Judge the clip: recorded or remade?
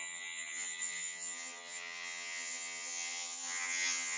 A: remade